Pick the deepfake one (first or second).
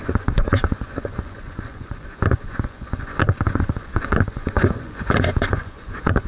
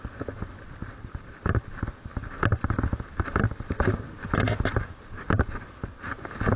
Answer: first